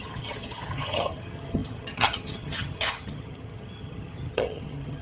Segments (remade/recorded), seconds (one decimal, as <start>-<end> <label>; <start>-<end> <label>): 0.0-5.0 remade